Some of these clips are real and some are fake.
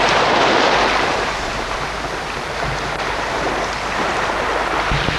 real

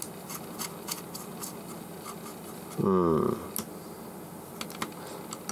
real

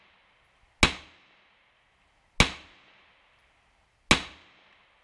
real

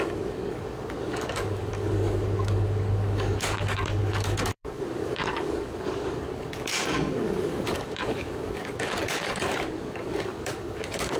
fake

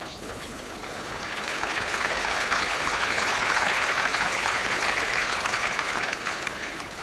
fake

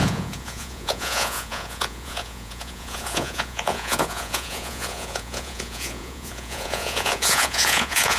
fake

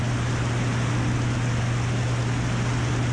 real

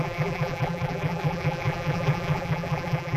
fake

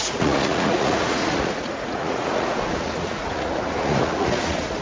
fake